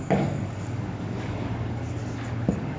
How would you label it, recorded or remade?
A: remade